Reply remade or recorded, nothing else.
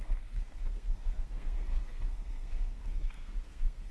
remade